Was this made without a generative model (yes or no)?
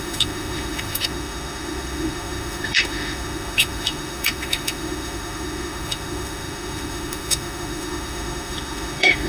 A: no